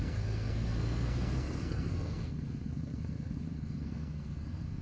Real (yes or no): no